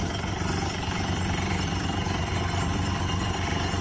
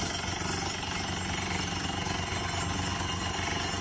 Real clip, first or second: second